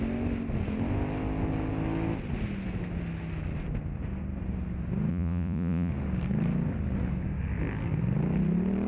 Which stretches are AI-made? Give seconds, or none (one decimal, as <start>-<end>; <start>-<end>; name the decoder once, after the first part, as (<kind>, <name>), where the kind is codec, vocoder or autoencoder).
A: 5.1-5.9 (vocoder, Vocos)